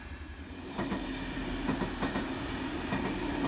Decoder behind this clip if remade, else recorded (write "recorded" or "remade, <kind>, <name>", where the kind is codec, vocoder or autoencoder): recorded